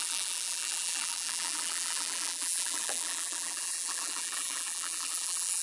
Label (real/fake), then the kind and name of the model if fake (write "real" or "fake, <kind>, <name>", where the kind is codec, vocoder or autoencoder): fake, vocoder, BigVGAN v2